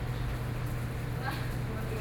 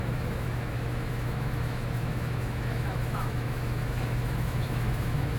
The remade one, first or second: second